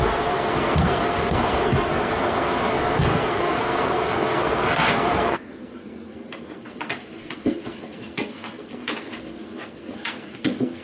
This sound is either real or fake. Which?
fake